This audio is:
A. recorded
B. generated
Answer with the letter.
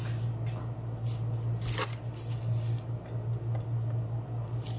A